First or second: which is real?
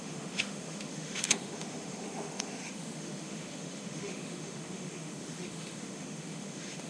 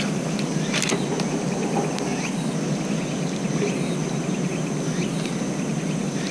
second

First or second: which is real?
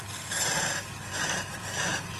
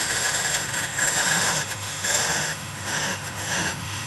first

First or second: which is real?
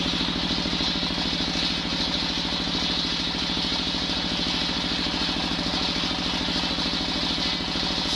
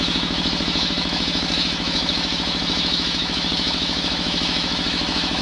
first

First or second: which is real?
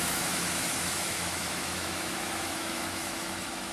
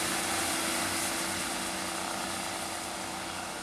second